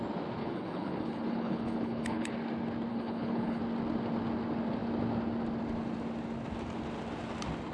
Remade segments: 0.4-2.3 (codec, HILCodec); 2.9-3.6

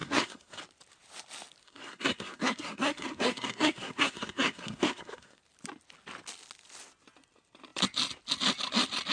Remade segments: 0.0-0.6 (codec, SNAC); 1.6-5.4

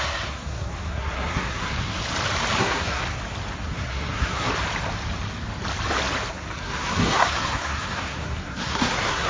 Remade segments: 0.0-2.0 (codec, SNAC); 2.6-3.0; 3.6-4.5; 6.3-9.3